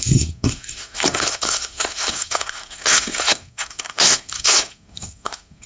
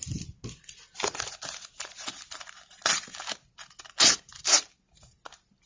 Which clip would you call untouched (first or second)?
second